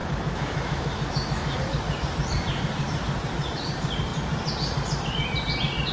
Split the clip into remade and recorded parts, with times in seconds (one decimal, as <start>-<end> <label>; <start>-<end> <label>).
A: 0.0-1.6 remade; 1.6-5.9 recorded